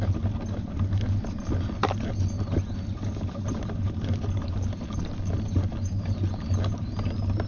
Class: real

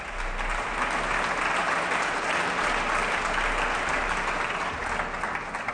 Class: real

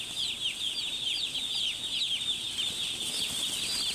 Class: real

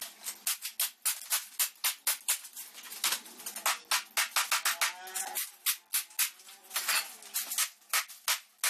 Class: real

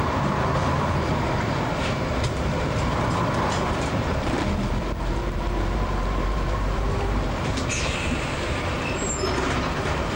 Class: fake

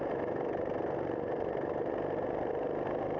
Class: real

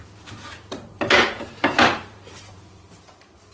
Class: fake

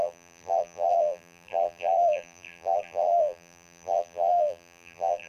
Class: fake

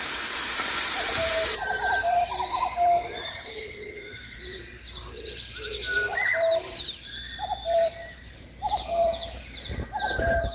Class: fake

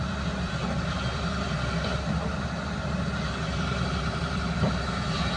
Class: fake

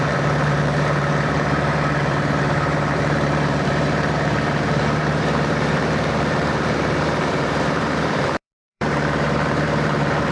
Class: fake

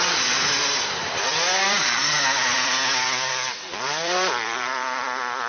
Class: fake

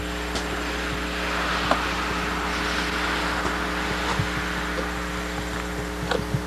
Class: real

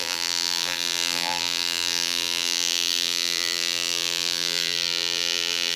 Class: fake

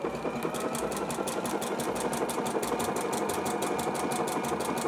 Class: real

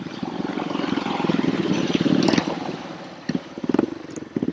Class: fake